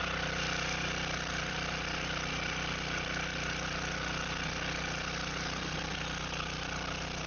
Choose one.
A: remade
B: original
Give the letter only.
B